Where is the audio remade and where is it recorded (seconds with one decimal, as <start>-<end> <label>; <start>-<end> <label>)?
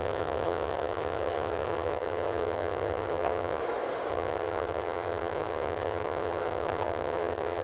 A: 0.0-3.6 remade; 3.6-4.1 recorded; 4.1-7.6 remade